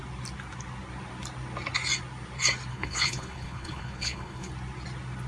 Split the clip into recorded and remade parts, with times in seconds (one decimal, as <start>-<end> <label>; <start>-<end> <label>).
0.0-2.7 recorded; 2.7-4.5 remade; 4.5-5.3 recorded